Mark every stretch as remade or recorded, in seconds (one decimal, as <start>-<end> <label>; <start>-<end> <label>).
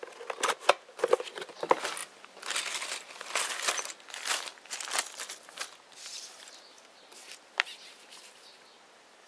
0.0-9.3 recorded